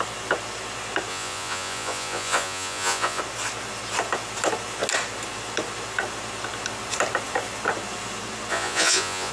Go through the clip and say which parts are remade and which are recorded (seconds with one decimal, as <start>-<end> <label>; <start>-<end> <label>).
0.0-1.1 recorded; 1.1-3.2 remade; 3.2-8.5 recorded; 8.5-9.3 remade